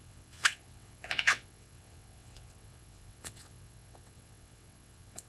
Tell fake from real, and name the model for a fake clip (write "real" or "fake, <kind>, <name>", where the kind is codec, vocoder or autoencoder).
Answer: fake, vocoder, WaveNeXt